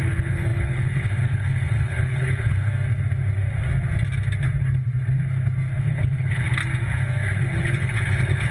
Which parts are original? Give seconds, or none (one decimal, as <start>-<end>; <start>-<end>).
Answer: 2.7-5.8; 6.6-7.4